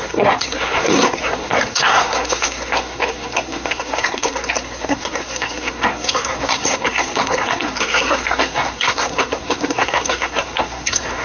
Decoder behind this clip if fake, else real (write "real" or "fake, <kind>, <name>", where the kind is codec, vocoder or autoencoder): fake, codec, SNAC